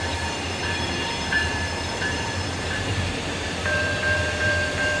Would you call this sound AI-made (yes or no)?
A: yes